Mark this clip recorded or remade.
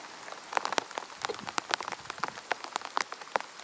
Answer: recorded